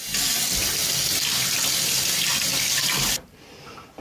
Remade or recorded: recorded